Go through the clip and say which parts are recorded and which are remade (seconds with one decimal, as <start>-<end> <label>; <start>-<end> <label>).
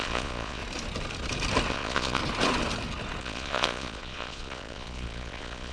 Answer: 0.0-0.6 remade; 0.6-1.7 recorded; 1.7-2.2 remade; 2.2-3.2 recorded; 3.2-5.7 remade